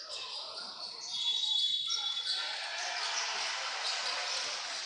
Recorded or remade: recorded